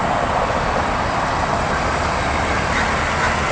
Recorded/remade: recorded